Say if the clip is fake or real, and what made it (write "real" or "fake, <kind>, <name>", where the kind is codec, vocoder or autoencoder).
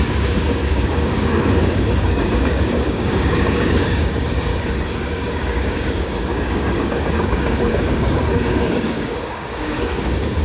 fake, codec, DAC